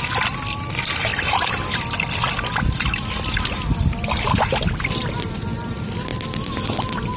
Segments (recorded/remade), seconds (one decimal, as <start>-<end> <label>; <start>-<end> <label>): 0.0-6.1 remade; 6.1-7.2 recorded